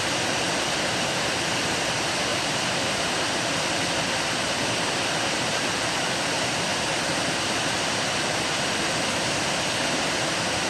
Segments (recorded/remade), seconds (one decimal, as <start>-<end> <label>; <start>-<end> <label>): 0.0-2.3 recorded; 2.3-3.3 remade; 3.3-6.7 recorded; 6.7-8.9 remade; 8.9-10.7 recorded